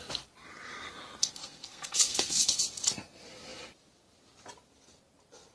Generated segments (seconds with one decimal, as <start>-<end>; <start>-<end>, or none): 1.2-2.6